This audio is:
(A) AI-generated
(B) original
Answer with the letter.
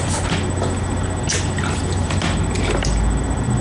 B